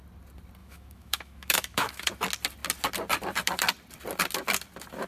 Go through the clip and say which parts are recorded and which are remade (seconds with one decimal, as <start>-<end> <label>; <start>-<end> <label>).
0.0-0.6 recorded; 0.6-2.1 remade; 2.1-5.1 recorded